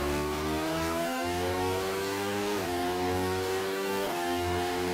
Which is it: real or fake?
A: fake